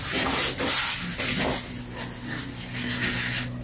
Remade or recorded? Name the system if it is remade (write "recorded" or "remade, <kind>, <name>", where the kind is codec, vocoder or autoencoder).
recorded